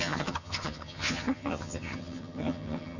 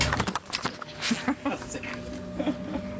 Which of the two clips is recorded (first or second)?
second